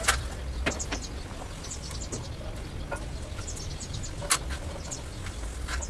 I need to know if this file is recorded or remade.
recorded